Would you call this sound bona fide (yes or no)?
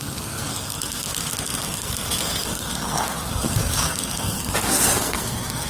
no